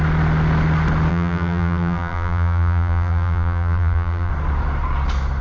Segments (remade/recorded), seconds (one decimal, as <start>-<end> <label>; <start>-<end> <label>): 0.0-1.1 recorded; 1.1-4.3 remade; 4.3-5.4 recorded